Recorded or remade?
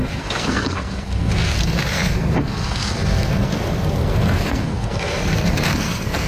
remade